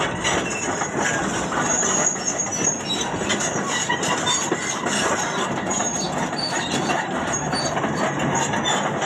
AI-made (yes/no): no